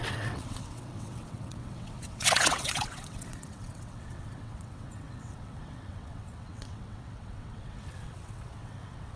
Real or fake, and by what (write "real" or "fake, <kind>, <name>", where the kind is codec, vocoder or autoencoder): fake, vocoder, WaveNeXt